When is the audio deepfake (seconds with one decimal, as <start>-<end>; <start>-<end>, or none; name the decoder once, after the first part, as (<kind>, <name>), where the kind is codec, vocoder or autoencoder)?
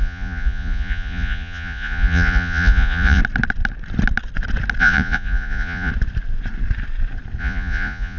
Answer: 0.0-3.2 (vocoder, Vocos); 4.8-5.9; 7.4-8.2